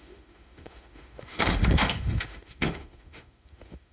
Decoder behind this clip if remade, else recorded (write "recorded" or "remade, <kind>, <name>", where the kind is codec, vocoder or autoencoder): remade, autoencoder, DAC-VAE